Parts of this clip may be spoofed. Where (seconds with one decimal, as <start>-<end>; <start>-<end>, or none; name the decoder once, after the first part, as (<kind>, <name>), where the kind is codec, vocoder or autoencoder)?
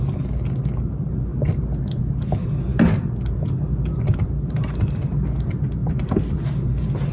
5.8-6.4 (vocoder, BigVGAN v2)